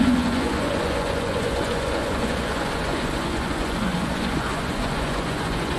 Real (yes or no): no